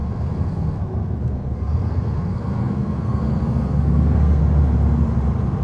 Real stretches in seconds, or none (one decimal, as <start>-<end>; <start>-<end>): 4.4-5.6